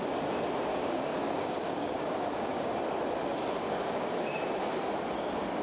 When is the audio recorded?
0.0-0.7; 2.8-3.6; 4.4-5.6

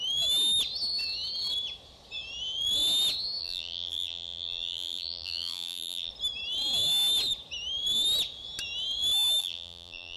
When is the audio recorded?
0.0-3.4; 6.1-9.4

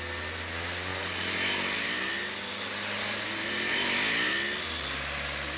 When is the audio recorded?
0.0-5.6

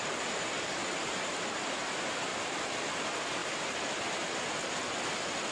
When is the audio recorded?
2.3-2.9; 3.4-4.0